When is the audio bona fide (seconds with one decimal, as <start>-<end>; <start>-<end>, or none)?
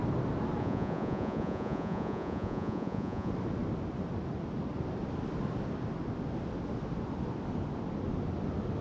0.0-0.6; 3.3-8.8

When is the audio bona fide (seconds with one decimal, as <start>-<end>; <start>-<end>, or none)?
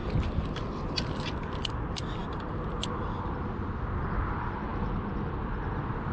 0.0-6.1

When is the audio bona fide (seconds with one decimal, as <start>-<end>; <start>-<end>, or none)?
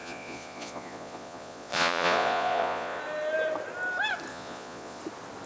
3.0-4.3; 5.0-5.5